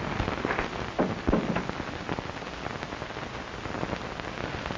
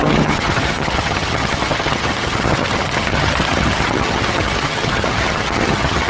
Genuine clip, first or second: first